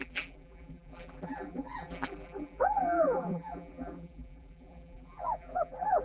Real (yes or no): no